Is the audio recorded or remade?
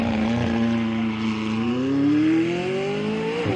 recorded